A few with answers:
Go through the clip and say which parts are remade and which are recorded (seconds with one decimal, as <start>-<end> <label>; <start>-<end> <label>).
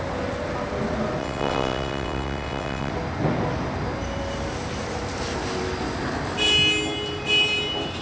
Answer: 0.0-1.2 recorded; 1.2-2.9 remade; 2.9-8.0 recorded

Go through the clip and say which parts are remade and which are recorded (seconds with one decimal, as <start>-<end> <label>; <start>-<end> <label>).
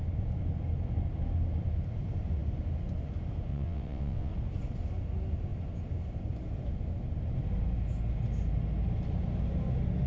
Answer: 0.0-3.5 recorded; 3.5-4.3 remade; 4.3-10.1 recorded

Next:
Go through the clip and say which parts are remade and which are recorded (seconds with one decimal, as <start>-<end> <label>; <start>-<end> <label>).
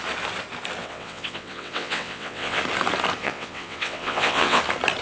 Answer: 0.0-0.8 recorded; 0.8-2.6 remade; 2.6-3.2 recorded; 3.2-4.6 remade; 4.6-5.0 recorded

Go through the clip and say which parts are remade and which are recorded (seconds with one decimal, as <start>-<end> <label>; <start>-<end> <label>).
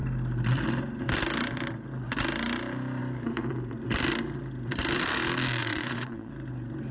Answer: 0.0-5.6 recorded; 5.6-6.3 remade; 6.3-6.9 recorded